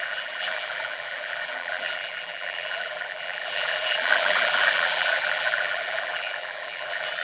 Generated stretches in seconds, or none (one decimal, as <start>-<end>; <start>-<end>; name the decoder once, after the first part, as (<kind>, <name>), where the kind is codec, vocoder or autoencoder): 0.0-7.2 (vocoder, BigVGAN v2)